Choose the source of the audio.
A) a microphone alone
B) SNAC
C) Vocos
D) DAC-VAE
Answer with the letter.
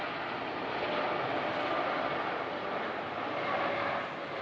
A